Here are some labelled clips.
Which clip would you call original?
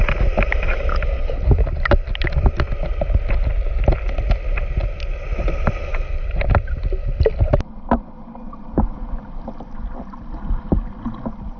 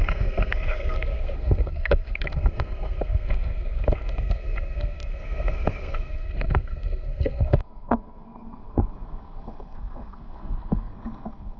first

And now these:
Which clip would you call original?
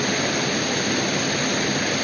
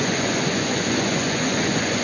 first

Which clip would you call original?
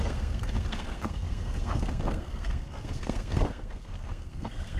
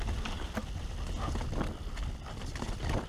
second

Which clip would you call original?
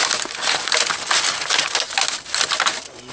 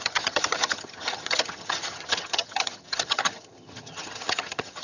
first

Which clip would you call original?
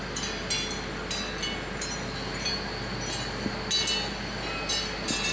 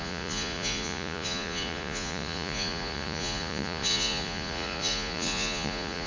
first